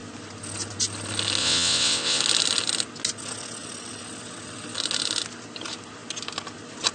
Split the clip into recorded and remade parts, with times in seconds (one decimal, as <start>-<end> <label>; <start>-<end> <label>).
0.0-1.4 recorded; 1.4-2.2 remade; 2.2-6.9 recorded